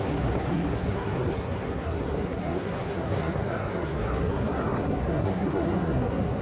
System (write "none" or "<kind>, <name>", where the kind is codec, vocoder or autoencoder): codec, SNAC